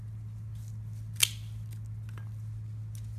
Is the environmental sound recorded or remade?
recorded